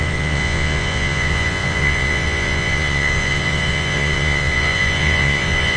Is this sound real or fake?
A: fake